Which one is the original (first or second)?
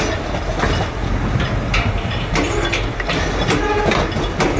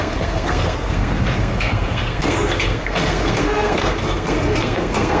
first